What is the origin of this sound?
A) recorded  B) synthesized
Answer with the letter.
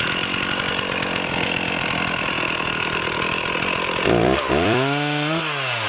B